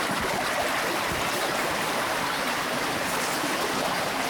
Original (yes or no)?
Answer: yes